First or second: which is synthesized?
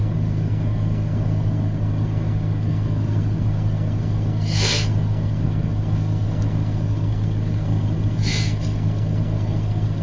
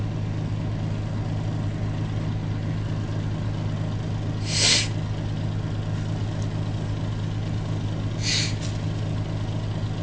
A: first